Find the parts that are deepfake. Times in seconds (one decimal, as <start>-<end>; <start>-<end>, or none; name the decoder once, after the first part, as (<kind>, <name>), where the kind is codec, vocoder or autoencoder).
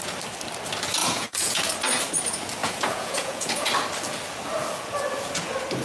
1.0-1.6 (vocoder, Vocos); 2.6-3.7